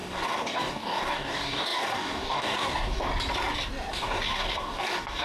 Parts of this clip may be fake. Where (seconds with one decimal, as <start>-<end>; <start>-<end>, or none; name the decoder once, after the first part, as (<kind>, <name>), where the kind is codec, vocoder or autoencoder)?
0.0-3.1 (codec, DAC); 3.9-5.2